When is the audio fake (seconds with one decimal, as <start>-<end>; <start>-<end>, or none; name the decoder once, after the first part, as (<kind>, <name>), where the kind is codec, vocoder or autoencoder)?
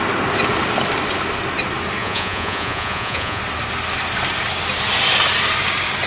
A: 2.0-3.4 (vocoder, Vocos)